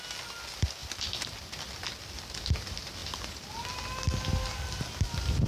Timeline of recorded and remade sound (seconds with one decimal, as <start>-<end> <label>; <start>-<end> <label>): 0.0-5.5 recorded